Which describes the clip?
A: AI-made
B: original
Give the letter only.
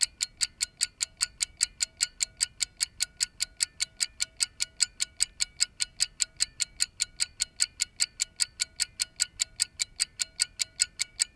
B